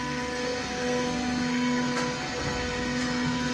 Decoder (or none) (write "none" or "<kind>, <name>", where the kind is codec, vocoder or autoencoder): codec, SNAC